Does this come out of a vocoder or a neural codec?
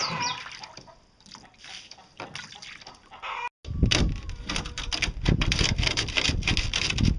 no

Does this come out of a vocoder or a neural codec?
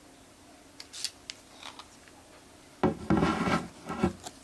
no